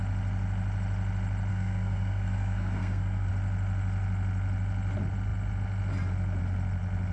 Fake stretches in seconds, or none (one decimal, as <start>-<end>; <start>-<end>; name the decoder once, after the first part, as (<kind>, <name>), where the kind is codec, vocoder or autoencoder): 1.5-3.3 (codec, SNAC)